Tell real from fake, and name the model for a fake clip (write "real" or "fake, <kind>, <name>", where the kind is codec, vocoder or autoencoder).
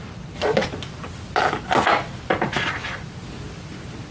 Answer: real